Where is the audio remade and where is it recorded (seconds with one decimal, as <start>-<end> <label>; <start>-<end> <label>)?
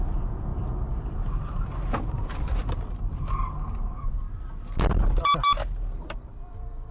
0.0-0.5 remade; 0.5-2.1 recorded; 2.1-2.6 remade; 2.6-6.0 recorded; 6.0-6.9 remade